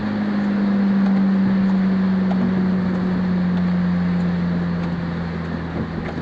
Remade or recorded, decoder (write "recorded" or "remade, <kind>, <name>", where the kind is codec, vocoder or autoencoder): recorded